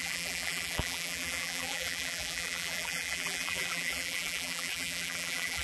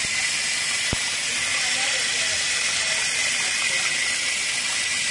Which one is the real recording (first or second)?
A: second